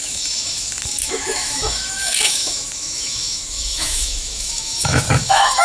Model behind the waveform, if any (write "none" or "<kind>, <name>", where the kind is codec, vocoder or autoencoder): autoencoder, DAC-VAE